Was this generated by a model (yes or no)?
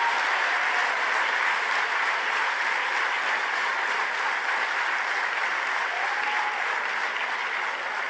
no